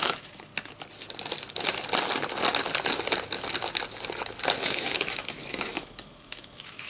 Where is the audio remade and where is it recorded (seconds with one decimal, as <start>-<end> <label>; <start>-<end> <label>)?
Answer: 0.0-0.5 remade; 0.5-4.6 recorded; 4.6-6.9 remade

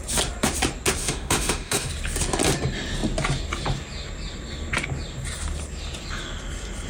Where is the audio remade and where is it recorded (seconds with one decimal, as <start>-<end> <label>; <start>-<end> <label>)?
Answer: 0.0-1.0 recorded; 1.0-1.9 remade; 1.9-6.9 recorded

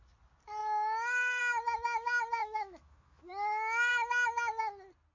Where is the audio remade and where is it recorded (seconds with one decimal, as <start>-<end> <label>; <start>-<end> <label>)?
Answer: 0.0-0.6 recorded; 0.6-1.4 remade; 1.4-2.4 recorded; 2.4-3.9 remade; 3.9-5.1 recorded

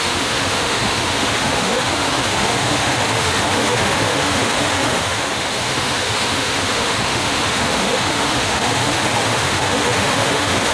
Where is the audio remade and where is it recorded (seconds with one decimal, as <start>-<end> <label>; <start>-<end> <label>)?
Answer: 0.0-10.7 remade

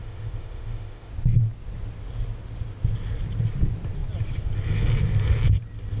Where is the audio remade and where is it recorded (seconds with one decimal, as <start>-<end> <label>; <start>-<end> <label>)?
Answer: 0.0-1.1 remade; 1.1-6.0 recorded

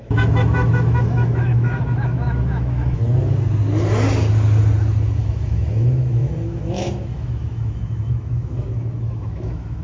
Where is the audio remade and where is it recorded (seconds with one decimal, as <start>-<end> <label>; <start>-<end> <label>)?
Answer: 0.0-3.0 remade; 3.0-5.2 recorded; 5.2-9.8 remade

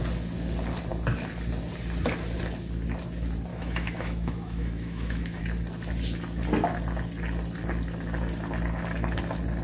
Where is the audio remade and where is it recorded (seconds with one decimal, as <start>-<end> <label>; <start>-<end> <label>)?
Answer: 0.0-3.5 recorded; 3.5-5.4 remade; 5.4-9.6 recorded

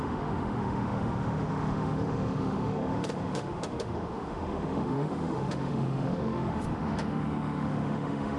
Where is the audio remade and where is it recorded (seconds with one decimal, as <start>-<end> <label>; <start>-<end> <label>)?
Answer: 0.0-8.4 remade